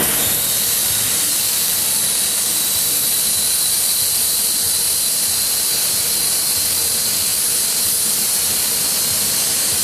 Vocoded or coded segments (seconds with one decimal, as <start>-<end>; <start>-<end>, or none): 0.8-4.8